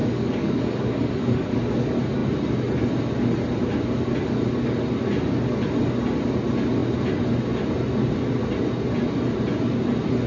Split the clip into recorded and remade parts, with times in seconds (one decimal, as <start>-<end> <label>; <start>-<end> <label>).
0.0-1.7 remade; 1.7-10.3 recorded